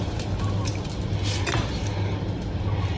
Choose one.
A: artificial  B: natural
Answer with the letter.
B